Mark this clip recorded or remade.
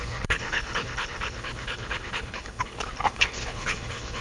remade